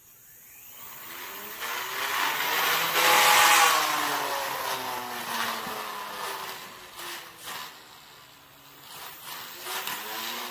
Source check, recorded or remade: recorded